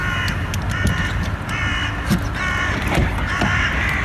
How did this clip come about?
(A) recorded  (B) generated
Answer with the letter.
A